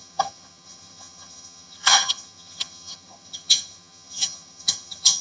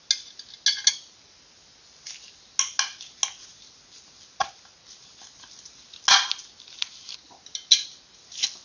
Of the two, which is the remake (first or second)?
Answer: first